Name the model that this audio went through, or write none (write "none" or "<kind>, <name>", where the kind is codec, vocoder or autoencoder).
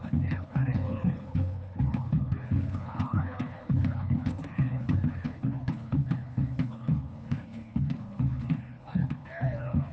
codec, HILCodec